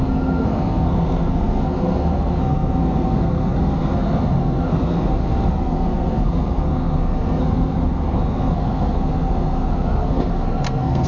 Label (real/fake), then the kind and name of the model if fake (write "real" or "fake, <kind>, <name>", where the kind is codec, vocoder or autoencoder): fake, codec, SNAC